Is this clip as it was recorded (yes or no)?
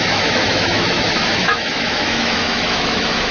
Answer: no